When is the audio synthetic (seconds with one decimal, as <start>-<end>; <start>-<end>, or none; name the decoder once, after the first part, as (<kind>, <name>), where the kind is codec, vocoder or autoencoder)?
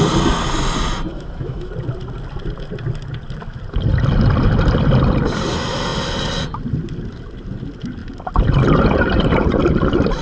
1.1-1.7 (autoencoder, DAC-VAE)